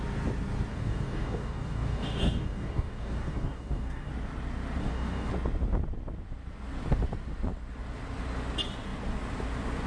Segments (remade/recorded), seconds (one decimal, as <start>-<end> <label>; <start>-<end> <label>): 0.0-0.7 recorded; 0.7-4.1 remade; 4.1-4.8 recorded; 4.8-5.3 remade; 5.3-9.9 recorded